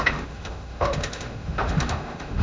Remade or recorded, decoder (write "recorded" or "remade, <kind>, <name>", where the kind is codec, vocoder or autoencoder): remade, autoencoder, DAC-VAE